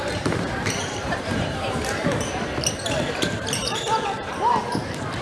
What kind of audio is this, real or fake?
fake